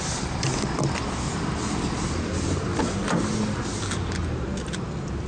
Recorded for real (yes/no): yes